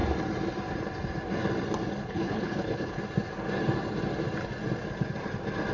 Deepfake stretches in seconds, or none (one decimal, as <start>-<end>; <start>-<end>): 2.0-3.0